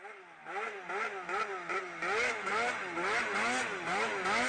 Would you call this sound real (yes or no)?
yes